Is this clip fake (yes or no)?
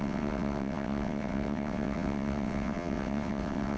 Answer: yes